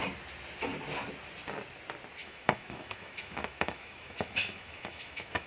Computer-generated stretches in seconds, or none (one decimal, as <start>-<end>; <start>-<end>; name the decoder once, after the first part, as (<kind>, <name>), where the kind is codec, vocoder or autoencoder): 2.2-5.5 (autoencoder, DAC-VAE)